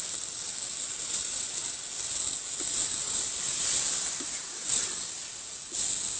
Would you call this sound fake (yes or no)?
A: no